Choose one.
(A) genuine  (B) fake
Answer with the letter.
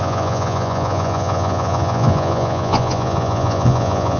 B